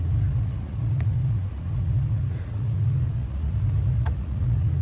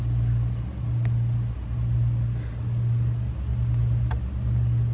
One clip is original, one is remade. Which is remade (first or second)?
first